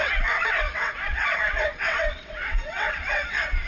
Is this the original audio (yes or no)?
no